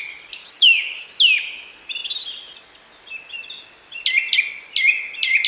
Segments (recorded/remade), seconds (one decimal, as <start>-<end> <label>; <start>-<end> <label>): 0.0-0.4 recorded; 0.4-1.2 remade; 1.2-5.5 recorded